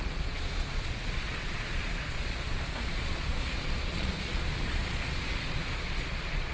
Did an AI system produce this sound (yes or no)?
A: yes